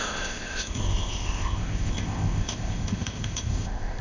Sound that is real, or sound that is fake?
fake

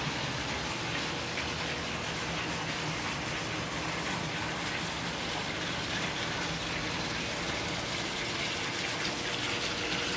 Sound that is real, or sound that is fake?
real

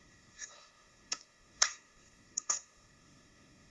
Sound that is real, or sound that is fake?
fake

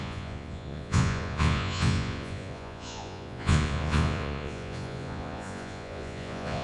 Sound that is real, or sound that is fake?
fake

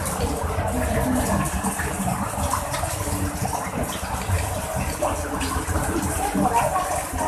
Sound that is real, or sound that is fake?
real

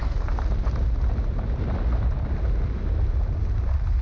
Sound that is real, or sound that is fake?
real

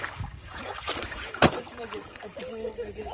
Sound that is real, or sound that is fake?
fake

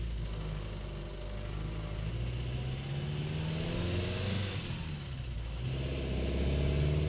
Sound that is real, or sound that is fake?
real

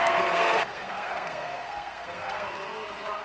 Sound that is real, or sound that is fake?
fake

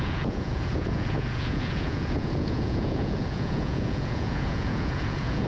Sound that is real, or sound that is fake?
fake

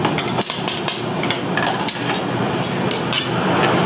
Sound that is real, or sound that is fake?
real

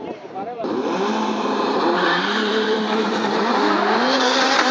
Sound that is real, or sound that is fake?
fake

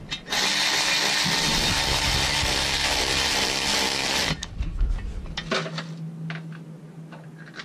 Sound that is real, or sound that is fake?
real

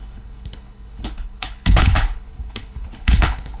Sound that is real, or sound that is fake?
fake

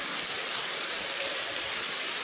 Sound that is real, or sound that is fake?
fake